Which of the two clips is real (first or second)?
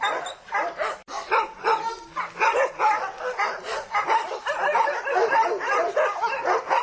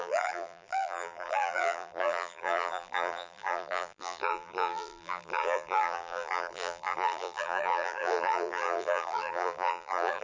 first